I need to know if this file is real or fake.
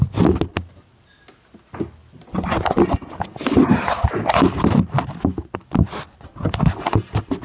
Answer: real